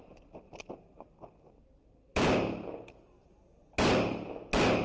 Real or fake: real